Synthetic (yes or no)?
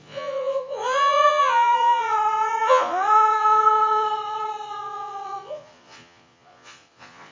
yes